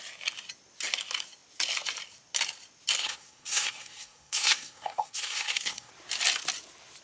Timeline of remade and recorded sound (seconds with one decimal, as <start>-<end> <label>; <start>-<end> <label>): 0.0-3.0 recorded; 3.0-5.9 remade; 5.9-7.0 recorded